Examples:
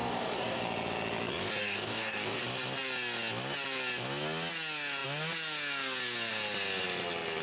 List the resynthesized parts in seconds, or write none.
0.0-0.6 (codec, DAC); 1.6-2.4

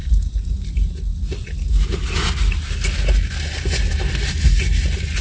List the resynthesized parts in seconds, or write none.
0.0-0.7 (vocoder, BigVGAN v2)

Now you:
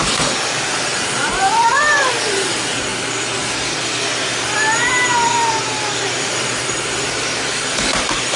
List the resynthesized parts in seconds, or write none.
0.0-2.9 (vocoder, BigVGAN v2); 6.2-8.4